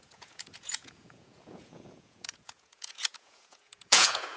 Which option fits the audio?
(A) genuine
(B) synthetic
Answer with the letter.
B